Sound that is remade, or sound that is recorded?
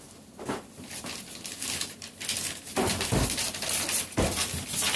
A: recorded